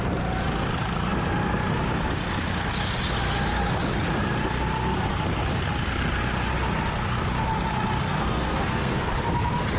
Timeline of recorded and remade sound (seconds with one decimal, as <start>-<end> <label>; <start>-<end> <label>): 0.0-8.0 recorded; 8.0-9.1 remade; 9.1-9.8 recorded